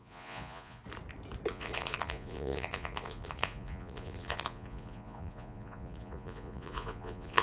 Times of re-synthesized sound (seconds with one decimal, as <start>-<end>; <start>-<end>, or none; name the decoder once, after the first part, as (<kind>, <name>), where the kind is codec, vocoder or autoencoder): 0.0-0.8 (vocoder, Vocos); 1.5-7.4

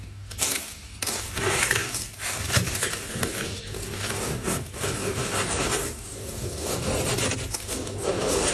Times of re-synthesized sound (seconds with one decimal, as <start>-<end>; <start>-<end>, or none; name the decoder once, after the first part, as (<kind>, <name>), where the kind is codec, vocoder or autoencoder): 0.0-6.9 (codec, DAC); 7.5-8.5

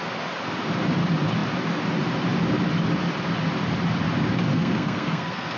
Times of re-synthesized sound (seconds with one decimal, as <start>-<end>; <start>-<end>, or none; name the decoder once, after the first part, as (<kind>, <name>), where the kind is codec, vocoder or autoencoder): 4.5-5.6 (codec, SNAC)